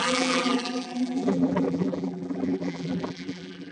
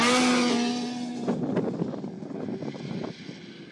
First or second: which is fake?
first